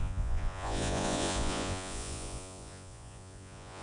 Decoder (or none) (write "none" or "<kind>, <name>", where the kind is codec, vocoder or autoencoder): vocoder, Vocos